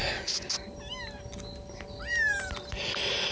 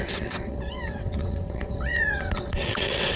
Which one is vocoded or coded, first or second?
second